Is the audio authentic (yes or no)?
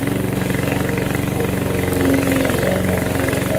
yes